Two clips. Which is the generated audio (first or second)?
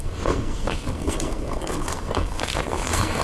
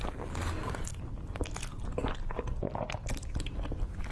first